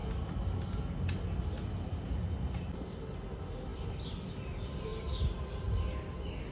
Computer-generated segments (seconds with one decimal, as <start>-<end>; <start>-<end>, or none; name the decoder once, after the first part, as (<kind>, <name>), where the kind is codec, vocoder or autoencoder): none

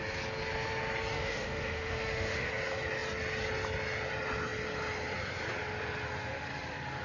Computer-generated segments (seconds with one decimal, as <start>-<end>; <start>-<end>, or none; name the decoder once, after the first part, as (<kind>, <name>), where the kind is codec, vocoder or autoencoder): 1.1-2.5 (autoencoder, DAC-VAE)